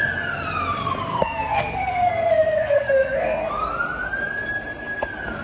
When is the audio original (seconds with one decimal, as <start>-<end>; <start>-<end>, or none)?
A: 0.0-1.1; 3.5-5.4